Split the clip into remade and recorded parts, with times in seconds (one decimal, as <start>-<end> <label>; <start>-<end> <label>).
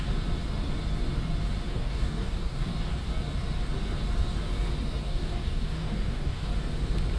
0.0-1.7 recorded; 1.7-2.7 remade; 2.7-5.0 recorded; 5.0-6.5 remade; 6.5-7.2 recorded